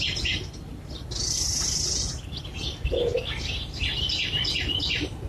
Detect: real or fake real